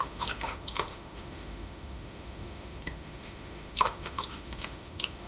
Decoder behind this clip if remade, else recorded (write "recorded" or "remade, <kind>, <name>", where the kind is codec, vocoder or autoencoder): remade, autoencoder, DAC-VAE